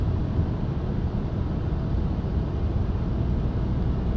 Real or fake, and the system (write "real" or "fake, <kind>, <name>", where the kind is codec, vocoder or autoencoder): real